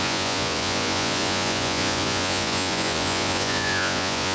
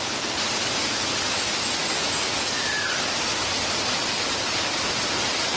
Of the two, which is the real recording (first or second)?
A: second